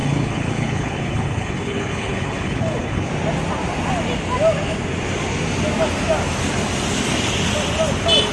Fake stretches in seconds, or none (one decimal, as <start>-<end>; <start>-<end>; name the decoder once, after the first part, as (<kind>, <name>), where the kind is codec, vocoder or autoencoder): 0.0-3.1 (codec, HILCodec)